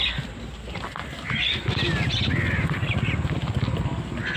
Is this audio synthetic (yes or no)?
no